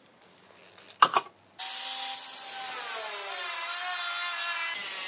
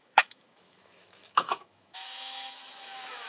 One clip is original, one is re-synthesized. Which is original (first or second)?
first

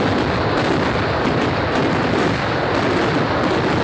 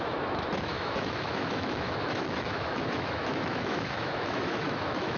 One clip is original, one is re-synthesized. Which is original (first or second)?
first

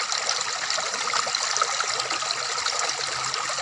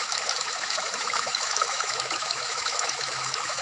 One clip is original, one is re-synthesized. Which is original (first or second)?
first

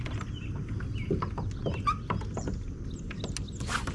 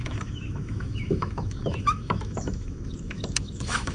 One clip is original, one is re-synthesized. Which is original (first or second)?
first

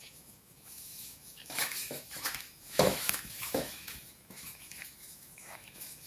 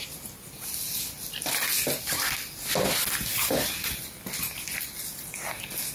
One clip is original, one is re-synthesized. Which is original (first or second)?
second